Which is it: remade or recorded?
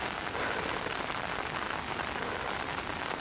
recorded